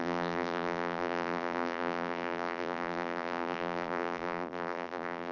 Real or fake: fake